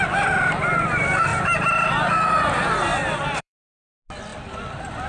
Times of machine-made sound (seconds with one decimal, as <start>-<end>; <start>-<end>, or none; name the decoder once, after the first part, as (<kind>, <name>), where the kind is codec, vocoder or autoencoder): 2.9-3.8 (vocoder, BigVGAN v2); 4.3-5.1